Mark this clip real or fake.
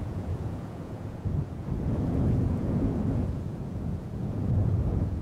fake